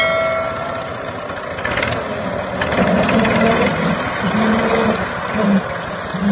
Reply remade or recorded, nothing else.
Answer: recorded